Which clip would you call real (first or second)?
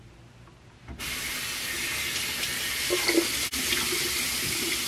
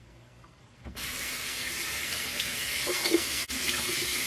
first